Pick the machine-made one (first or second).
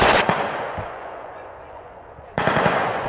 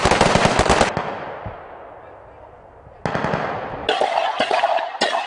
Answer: first